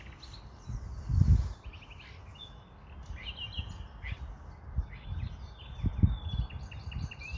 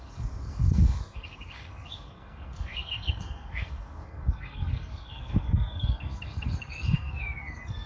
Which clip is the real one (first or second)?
first